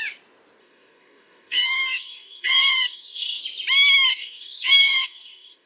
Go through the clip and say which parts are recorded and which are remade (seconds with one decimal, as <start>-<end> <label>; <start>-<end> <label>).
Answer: 0.0-0.6 recorded; 0.6-3.4 remade; 3.4-4.1 recorded; 4.1-5.7 remade